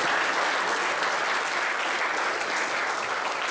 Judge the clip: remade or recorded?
recorded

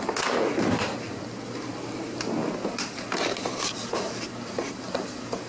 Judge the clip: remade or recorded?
recorded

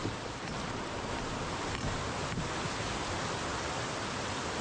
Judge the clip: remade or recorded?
recorded